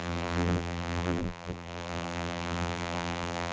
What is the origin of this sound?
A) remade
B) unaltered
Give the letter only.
A